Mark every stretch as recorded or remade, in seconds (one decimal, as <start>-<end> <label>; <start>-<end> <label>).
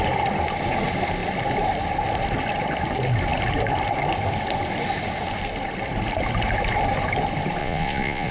0.0-7.6 recorded; 7.6-8.3 remade